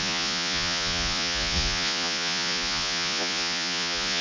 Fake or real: fake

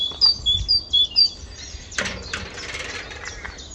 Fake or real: real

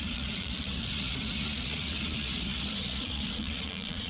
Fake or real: fake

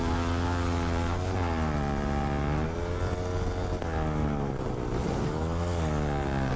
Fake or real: real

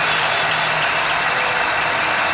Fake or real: real